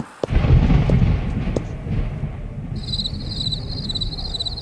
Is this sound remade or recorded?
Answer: recorded